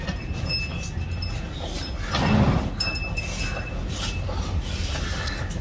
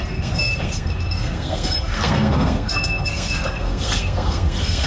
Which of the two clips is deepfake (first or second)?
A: second